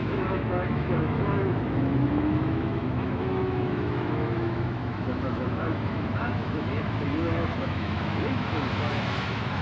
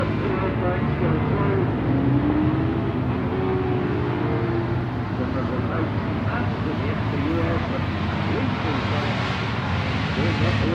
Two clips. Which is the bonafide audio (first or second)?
second